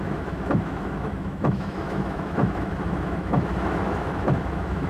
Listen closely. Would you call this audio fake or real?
fake